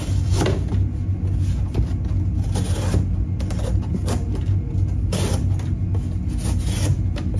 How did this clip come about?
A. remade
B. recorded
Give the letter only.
B